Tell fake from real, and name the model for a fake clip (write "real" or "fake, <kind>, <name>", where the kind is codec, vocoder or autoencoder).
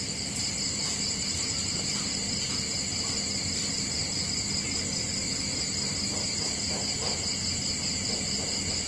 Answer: real